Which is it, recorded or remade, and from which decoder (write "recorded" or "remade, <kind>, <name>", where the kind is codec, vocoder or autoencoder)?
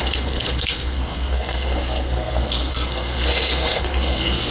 remade, codec, SNAC